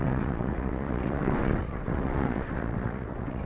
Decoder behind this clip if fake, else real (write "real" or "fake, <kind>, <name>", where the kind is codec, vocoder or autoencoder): fake, vocoder, WaveNeXt